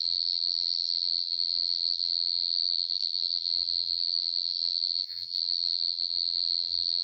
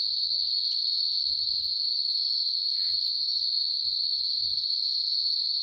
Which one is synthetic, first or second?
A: first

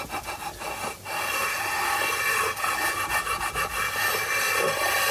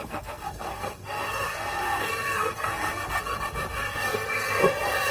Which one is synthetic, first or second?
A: second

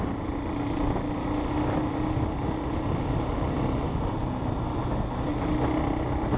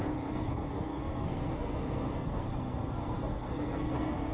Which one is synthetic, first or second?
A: second